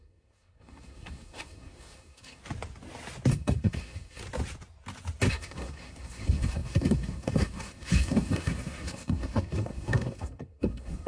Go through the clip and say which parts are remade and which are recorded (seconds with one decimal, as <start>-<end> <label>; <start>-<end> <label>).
0.0-2.4 remade; 2.4-3.3 recorded; 3.3-4.2 remade; 4.2-5.3 recorded; 5.3-11.1 remade